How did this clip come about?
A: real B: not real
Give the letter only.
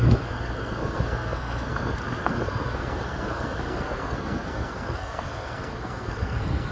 B